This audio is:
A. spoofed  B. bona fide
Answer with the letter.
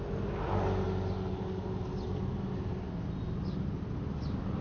B